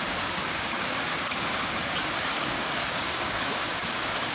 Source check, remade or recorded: remade